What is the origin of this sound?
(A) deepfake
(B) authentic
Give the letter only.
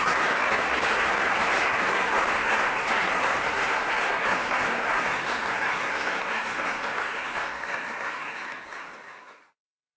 A